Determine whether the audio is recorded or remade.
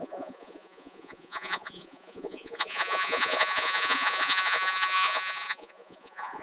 remade